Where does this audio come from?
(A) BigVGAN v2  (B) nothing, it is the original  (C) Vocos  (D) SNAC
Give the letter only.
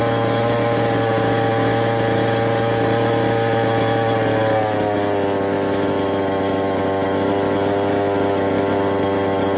B